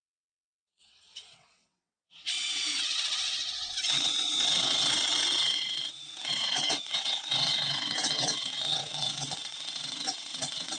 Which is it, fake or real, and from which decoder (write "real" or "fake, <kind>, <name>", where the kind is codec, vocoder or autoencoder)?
fake, vocoder, WaveNeXt